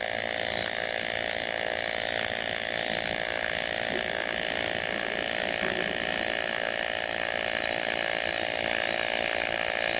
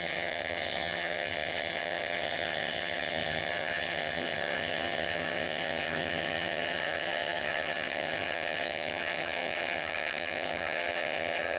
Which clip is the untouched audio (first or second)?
first